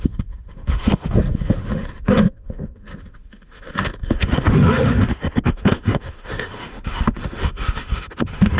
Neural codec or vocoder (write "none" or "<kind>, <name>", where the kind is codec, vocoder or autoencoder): autoencoder, DAC-VAE